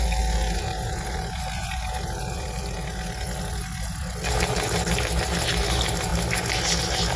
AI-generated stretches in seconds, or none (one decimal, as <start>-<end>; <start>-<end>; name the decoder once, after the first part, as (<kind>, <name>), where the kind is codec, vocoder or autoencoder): none

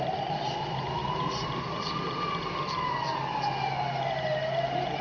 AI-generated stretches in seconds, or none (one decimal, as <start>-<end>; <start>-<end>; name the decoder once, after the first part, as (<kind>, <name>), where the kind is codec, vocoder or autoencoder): none

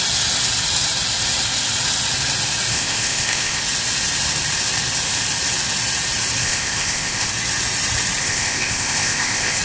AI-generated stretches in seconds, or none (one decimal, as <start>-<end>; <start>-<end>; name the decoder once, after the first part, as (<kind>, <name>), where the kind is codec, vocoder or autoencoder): 2.7-3.6 (codec, ZipCodec); 6.4-7.3; 8.2-9.6

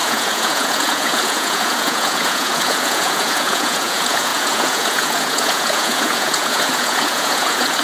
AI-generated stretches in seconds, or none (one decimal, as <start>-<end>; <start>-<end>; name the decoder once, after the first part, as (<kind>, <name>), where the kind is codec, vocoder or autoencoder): 0.0-7.8 (vocoder, Vocos)

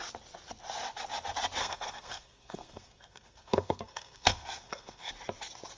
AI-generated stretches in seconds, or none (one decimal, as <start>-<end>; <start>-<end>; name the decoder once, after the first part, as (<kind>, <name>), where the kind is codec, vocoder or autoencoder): 1.6-5.1 (codec, SNAC)

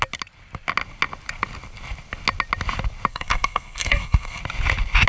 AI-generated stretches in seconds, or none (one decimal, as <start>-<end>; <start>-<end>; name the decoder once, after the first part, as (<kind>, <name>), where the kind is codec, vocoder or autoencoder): 3.1-4.4 (codec, SNAC)

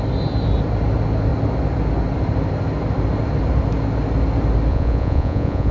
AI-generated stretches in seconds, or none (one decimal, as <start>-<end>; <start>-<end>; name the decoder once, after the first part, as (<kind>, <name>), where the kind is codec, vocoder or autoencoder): 4.7-5.7 (vocoder, Vocos)